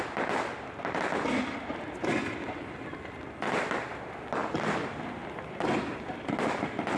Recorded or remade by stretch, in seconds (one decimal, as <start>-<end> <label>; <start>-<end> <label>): 0.0-4.4 recorded; 4.4-5.1 remade; 5.1-7.0 recorded